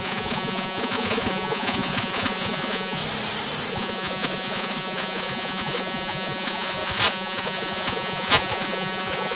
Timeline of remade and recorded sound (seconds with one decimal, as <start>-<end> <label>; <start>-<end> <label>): 0.0-3.0 remade; 3.0-3.7 recorded; 3.7-9.4 remade